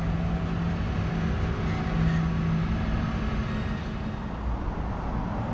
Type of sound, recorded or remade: recorded